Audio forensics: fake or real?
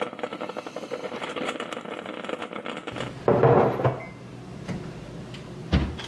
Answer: real